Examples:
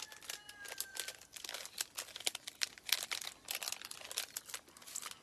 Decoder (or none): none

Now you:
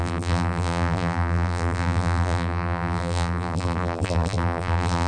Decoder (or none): vocoder, BigVGAN v2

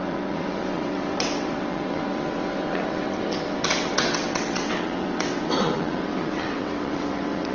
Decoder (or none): vocoder, WaveNeXt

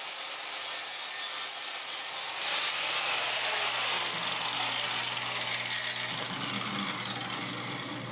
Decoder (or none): none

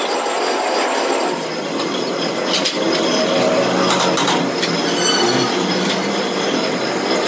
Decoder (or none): none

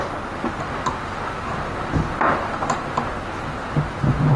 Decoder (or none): none